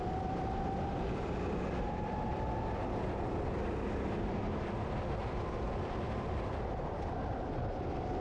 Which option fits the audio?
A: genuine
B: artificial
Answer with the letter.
B